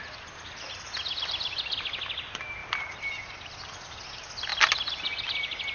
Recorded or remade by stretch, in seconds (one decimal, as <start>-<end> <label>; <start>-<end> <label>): 0.0-2.6 recorded; 2.6-4.0 remade; 4.0-5.7 recorded